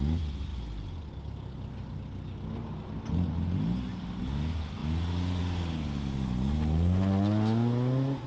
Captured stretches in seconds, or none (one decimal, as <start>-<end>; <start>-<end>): 0.0-8.3